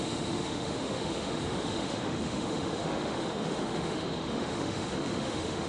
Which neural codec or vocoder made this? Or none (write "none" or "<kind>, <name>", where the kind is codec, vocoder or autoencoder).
autoencoder, DAC-VAE